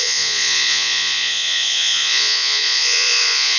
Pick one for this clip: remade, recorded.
remade